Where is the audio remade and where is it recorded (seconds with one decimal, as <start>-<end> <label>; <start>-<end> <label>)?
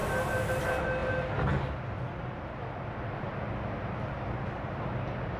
0.0-5.4 recorded